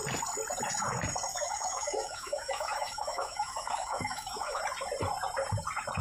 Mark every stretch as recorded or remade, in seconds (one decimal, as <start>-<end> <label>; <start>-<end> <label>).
0.0-1.3 recorded; 1.3-4.6 remade; 4.6-6.0 recorded